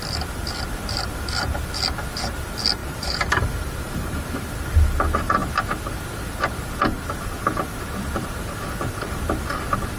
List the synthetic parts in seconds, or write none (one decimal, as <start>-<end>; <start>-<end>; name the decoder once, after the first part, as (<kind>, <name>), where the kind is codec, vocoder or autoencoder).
2.8-4.4 (vocoder, BigVGAN v2)